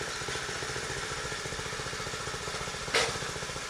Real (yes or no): yes